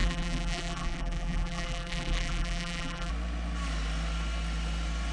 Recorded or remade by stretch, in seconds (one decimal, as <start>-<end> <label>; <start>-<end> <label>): 0.0-3.1 remade; 3.1-5.1 recorded